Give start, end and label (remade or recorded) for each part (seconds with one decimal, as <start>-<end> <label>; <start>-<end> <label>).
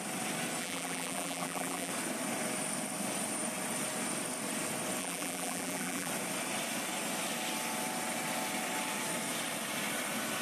0.0-0.6 recorded; 0.6-1.9 remade; 1.9-5.0 recorded; 5.0-6.1 remade; 6.1-10.4 recorded